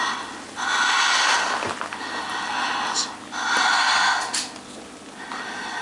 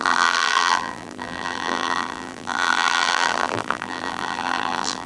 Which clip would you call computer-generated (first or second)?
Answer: second